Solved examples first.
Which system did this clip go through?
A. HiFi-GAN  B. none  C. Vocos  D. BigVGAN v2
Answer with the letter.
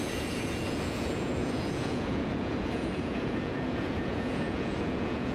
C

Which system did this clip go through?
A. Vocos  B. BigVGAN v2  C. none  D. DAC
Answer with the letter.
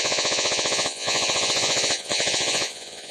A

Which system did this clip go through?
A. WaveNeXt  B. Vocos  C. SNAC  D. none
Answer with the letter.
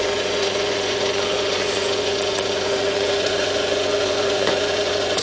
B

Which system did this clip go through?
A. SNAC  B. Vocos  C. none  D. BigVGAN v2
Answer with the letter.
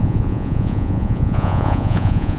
B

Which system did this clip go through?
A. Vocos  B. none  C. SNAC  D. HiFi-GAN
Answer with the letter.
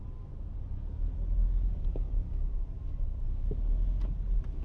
B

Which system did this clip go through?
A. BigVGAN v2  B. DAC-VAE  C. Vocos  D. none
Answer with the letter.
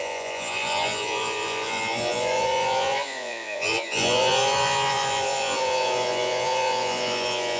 C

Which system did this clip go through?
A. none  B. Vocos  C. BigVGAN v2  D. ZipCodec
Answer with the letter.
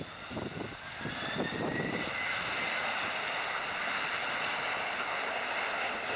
A